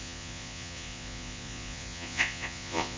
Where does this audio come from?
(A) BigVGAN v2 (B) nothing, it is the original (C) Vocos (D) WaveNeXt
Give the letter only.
C